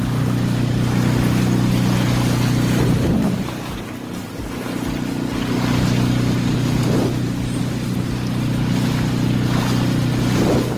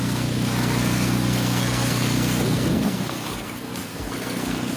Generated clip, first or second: second